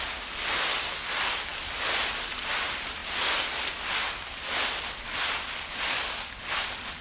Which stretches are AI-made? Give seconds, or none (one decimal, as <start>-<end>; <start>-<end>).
none